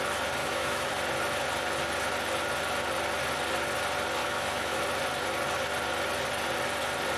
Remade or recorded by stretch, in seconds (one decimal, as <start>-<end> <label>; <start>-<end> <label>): 0.0-0.4 recorded; 0.4-1.0 remade; 1.0-4.2 recorded; 4.2-4.8 remade; 4.8-7.2 recorded